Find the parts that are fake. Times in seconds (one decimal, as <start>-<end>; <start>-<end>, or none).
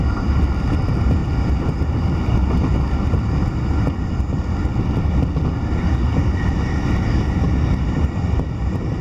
none